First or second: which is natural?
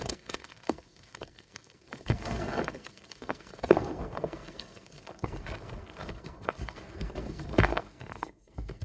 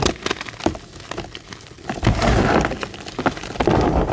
second